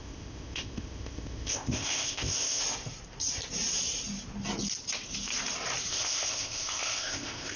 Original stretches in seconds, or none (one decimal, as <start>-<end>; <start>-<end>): 2.6-5.9